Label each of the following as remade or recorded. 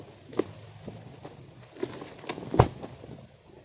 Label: recorded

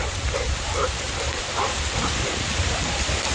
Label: remade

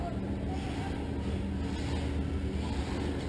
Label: recorded